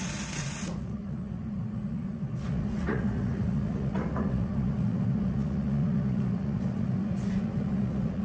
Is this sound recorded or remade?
remade